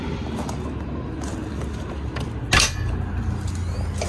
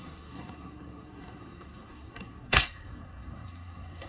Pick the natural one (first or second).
first